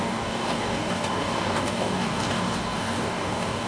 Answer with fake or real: fake